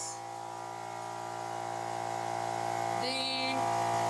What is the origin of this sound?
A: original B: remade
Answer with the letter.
A